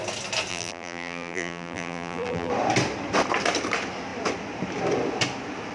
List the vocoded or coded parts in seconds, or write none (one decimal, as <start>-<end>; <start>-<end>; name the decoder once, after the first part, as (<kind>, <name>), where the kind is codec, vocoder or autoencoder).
0.5-2.5 (vocoder, BigVGAN v2)